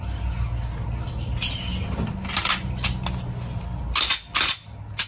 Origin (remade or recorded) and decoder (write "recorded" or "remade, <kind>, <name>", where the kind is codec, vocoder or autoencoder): recorded